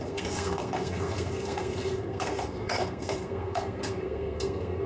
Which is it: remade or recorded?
remade